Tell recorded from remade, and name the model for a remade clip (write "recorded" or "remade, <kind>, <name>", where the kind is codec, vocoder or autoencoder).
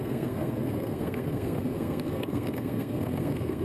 remade, codec, SNAC